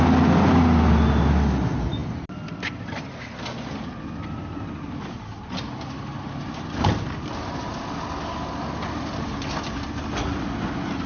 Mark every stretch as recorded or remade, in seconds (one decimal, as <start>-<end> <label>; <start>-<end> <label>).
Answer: 0.0-11.1 recorded